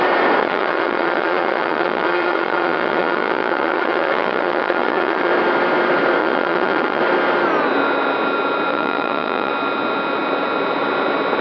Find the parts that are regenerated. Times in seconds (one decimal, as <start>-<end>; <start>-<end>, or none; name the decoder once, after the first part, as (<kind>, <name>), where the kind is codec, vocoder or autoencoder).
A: 0.4-5.3 (vocoder, Vocos); 6.2-7.0; 8.7-9.5